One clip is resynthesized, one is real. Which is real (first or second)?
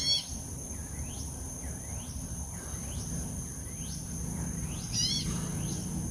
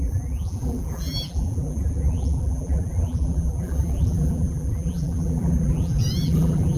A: first